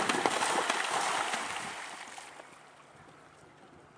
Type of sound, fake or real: real